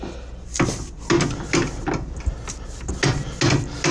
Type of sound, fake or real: real